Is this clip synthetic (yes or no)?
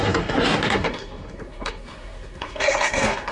yes